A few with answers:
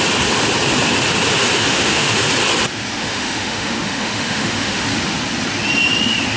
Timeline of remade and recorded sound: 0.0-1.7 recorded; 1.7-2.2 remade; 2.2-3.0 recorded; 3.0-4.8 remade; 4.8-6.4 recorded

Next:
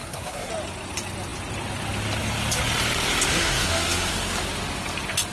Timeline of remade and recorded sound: 0.0-0.5 remade; 0.5-3.3 recorded; 3.3-4.1 remade; 4.1-5.3 recorded